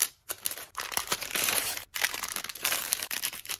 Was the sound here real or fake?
fake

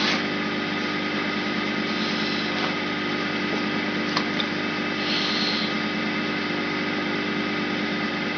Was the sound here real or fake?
real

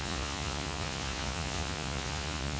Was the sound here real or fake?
fake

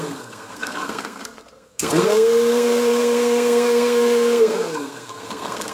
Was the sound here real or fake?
fake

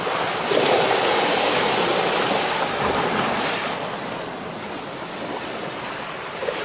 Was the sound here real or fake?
real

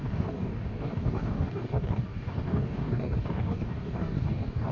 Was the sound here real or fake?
fake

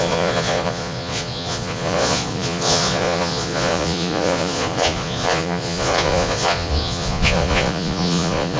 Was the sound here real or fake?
fake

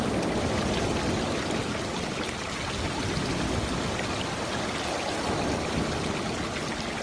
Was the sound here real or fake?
real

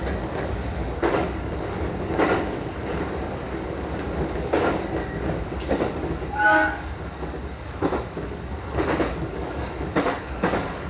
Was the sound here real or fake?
fake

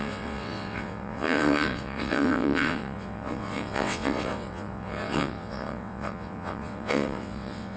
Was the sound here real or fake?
fake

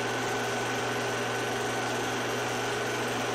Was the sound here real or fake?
real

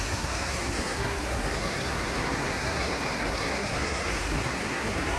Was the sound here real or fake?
fake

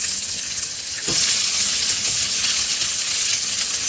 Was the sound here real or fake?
fake